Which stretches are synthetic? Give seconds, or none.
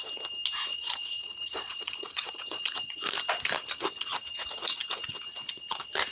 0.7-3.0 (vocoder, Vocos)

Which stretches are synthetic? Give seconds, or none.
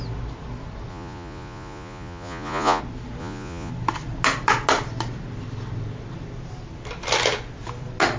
0.9-2.8 (vocoder, Vocos); 3.2-3.7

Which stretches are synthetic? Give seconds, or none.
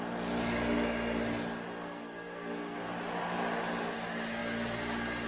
1.8-2.8 (codec, SNAC)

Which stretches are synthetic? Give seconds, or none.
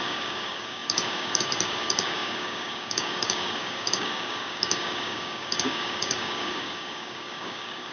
0.0-7.9 (codec, DAC)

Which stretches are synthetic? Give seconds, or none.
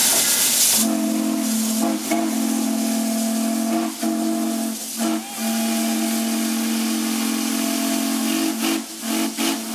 none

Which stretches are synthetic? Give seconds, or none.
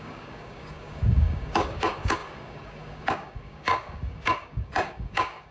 0.0-5.5 (codec, DAC)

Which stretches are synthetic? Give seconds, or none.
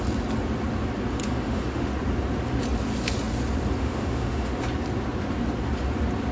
1.2-1.9 (autoencoder, DAC-VAE); 3.8-4.5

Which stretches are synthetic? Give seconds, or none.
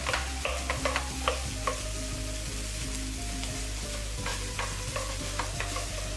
none